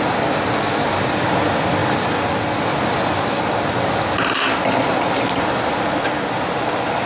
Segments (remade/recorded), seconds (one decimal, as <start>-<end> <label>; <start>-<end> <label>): 0.0-7.1 recorded